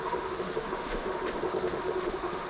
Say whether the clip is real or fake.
fake